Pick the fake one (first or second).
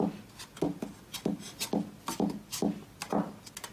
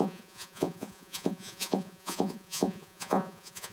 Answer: second